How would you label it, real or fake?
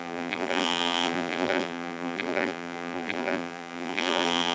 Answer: fake